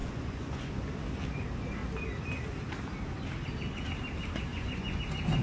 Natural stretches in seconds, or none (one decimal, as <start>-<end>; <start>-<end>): 0.7-4.5; 5.0-5.4

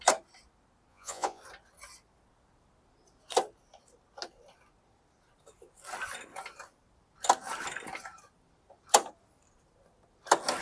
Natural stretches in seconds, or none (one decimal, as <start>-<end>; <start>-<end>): 0.0-0.9; 1.4-10.6

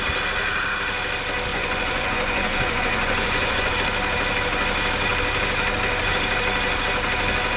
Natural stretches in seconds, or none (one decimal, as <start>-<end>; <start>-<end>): 0.0-1.5; 3.7-7.6

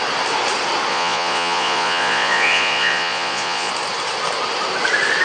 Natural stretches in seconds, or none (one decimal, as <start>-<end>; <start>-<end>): 0.0-0.9; 3.7-5.2

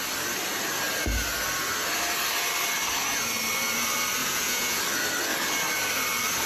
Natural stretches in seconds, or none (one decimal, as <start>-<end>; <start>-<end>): 0.0-4.2; 4.8-6.5

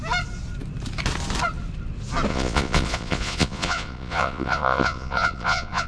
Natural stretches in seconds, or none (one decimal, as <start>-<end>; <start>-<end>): 0.0-2.3

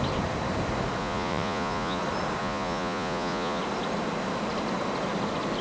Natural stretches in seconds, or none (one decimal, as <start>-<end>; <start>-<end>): 0.0-1.0; 2.0-2.4; 3.6-5.6